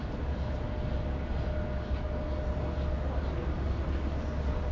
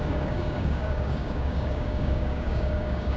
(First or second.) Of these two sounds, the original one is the first